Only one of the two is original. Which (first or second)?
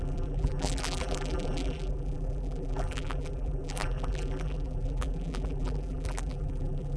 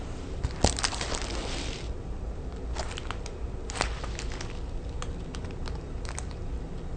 second